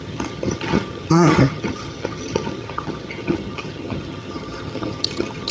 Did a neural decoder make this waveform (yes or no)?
yes